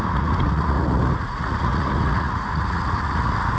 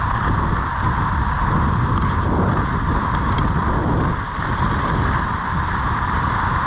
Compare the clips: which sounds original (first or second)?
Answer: second